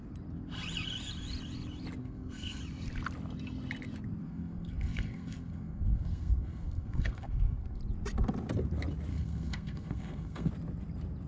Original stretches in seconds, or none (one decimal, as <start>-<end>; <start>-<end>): 0.0-2.0; 2.6-4.2; 7.8-9.1; 10.5-11.3